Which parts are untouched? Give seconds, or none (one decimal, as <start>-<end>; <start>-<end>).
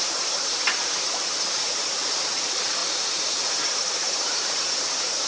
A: 2.8-3.8